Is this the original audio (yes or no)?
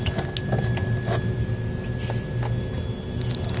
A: yes